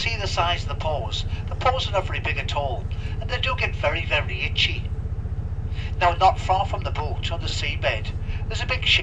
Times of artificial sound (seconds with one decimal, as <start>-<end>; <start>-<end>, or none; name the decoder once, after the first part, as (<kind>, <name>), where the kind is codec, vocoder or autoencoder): 3.3-4.4 (vocoder, Vocos)